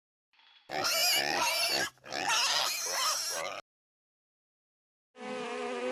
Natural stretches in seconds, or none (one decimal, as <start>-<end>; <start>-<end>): 0.0-5.9